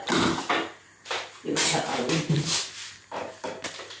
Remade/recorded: recorded